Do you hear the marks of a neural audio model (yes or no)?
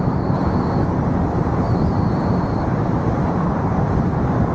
no